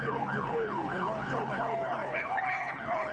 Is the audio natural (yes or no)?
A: no